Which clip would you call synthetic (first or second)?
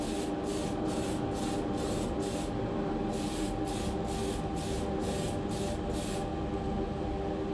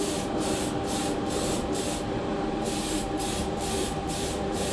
second